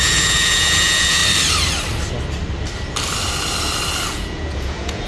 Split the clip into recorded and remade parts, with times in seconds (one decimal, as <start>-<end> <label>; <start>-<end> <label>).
0.0-1.2 remade; 1.2-4.1 recorded; 4.1-5.1 remade